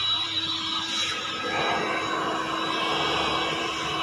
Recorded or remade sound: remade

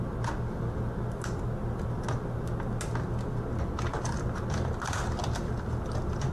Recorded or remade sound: recorded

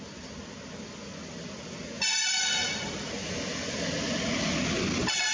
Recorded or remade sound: recorded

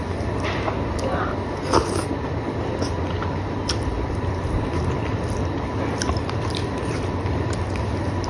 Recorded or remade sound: recorded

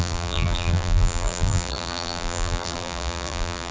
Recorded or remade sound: remade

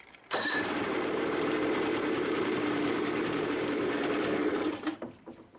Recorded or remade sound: remade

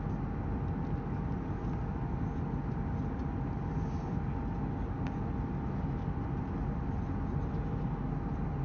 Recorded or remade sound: recorded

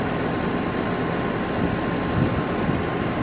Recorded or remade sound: recorded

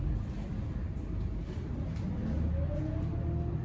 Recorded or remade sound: recorded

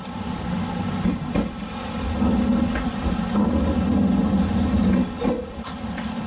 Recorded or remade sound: recorded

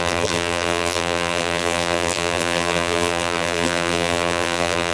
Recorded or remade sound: remade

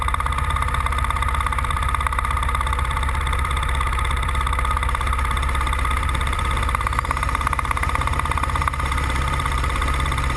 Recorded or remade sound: remade